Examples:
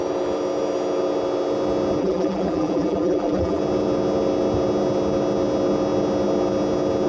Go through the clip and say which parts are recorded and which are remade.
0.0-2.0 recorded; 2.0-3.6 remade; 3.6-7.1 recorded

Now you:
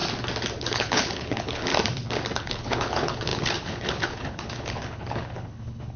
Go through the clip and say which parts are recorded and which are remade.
0.0-0.6 recorded; 0.6-1.7 remade; 1.7-2.4 recorded; 2.4-6.0 remade

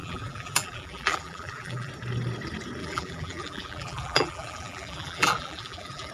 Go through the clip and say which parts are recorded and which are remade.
0.0-1.9 remade; 1.9-2.8 recorded; 2.8-6.1 remade